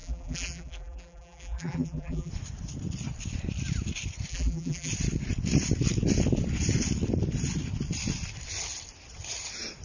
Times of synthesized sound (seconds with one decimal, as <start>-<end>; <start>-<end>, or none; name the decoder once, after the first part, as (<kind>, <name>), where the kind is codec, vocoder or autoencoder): 0.0-2.3 (vocoder, BigVGAN v2); 4.3-4.9